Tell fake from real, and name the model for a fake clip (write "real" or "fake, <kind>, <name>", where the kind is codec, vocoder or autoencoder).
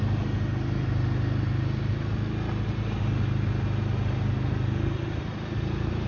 real